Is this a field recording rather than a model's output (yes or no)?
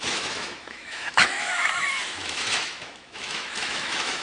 no